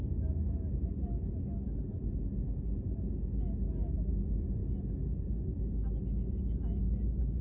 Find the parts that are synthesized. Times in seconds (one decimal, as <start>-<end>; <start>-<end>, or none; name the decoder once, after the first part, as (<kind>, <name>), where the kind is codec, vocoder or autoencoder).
none